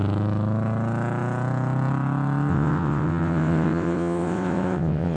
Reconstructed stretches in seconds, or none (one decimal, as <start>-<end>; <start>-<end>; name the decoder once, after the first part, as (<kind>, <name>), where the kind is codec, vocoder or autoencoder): 2.5-5.2 (vocoder, WaveNeXt)